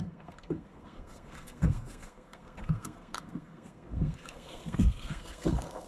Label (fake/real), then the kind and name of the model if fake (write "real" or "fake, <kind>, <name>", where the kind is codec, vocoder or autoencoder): fake, codec, SNAC